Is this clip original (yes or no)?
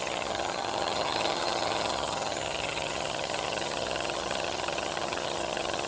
no